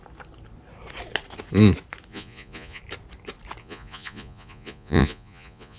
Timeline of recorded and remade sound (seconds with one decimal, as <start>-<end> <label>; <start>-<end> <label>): 0.0-2.1 recorded; 2.1-2.8 remade; 2.8-3.6 recorded; 3.6-5.8 remade